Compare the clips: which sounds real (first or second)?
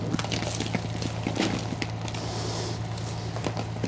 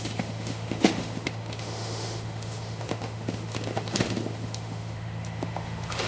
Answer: first